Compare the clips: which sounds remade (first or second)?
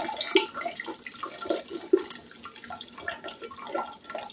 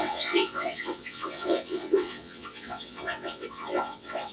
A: second